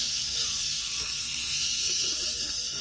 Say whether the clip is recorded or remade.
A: remade